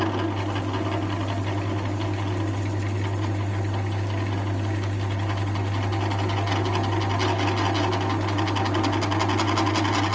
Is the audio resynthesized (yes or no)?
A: no